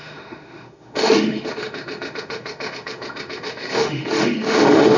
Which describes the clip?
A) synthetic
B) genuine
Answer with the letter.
A